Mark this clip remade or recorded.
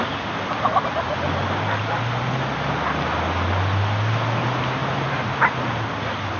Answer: recorded